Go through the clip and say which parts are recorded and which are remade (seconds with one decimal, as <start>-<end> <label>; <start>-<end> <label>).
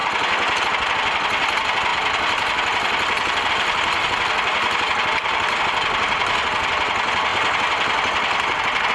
0.0-8.9 recorded